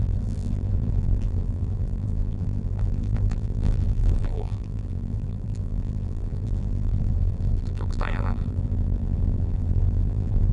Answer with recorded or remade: remade